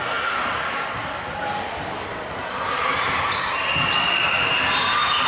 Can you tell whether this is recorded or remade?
recorded